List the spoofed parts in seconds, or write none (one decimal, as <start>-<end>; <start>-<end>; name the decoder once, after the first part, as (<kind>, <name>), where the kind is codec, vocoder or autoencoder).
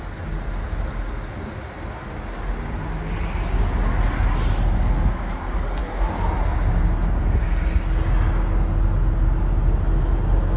none